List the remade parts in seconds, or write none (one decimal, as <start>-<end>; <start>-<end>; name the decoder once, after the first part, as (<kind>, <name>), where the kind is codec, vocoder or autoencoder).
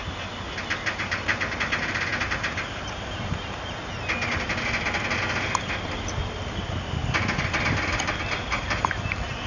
none